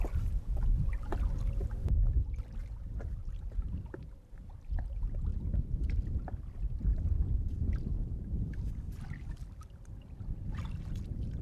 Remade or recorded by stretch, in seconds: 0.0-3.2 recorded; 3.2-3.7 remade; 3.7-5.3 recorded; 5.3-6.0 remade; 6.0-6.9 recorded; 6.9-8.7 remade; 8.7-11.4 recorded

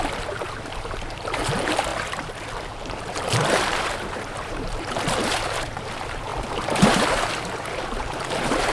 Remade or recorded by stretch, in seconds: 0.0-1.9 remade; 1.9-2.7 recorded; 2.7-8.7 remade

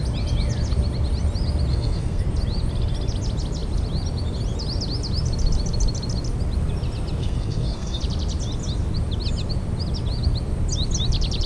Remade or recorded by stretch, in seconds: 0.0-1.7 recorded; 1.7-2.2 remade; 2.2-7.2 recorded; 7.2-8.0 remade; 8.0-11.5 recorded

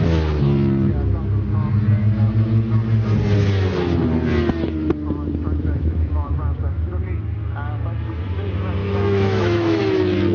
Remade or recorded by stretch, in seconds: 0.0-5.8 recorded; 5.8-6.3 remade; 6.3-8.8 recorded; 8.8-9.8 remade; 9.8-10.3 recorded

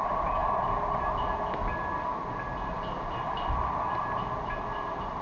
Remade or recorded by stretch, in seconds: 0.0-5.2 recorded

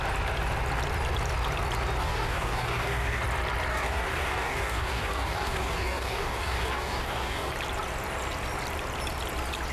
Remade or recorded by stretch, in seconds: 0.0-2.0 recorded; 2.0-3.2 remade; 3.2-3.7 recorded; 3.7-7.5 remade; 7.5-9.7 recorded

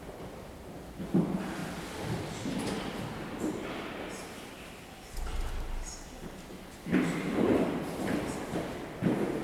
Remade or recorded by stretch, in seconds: 0.0-9.4 recorded